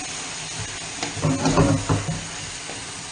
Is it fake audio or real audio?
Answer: real